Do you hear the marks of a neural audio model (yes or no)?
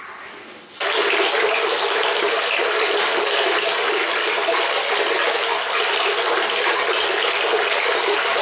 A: no